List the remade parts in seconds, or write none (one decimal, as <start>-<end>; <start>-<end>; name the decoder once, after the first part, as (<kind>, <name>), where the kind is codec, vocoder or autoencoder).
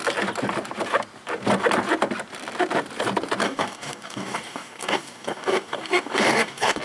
3.4-6.8 (codec, DAC)